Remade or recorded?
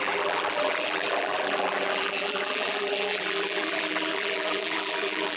remade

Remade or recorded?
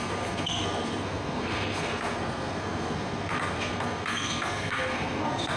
remade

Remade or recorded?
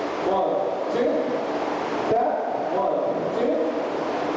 recorded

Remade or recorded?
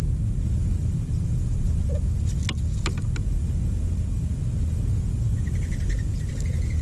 recorded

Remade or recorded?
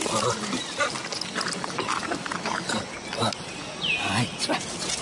recorded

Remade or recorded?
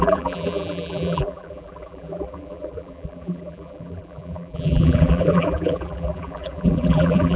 remade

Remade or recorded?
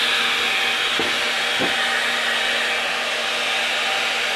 recorded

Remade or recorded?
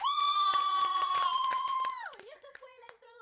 remade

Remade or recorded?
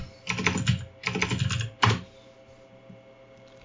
recorded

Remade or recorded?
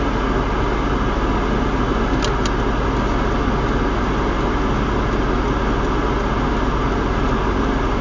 recorded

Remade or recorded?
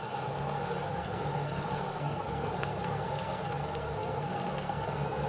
remade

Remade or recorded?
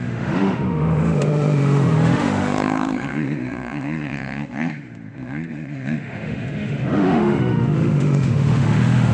remade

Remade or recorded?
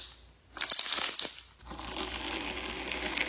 recorded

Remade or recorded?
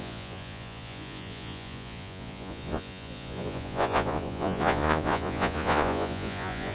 remade